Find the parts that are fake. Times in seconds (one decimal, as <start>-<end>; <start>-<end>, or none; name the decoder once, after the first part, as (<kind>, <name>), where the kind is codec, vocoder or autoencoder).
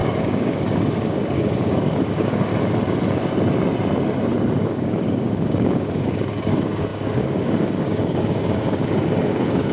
0.0-2.5 (codec, DAC); 4.6-9.7